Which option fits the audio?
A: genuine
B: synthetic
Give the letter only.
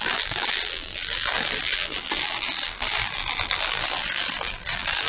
B